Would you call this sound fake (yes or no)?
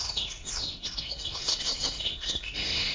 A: yes